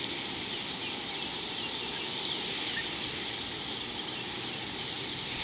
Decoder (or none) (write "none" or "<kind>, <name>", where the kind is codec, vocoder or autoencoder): none